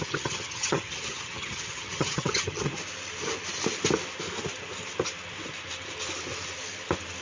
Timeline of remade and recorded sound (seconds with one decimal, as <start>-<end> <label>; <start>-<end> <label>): 0.0-2.7 remade; 2.7-7.2 recorded